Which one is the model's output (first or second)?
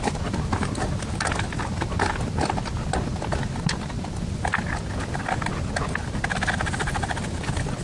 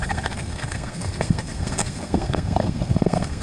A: second